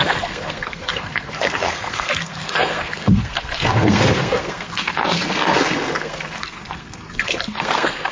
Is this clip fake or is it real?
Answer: fake